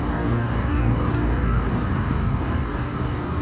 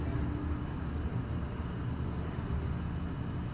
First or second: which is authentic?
second